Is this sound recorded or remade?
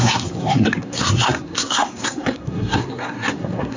remade